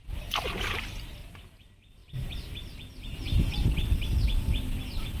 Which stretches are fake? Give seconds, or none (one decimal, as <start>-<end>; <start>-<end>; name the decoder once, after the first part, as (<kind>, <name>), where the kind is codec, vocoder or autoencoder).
none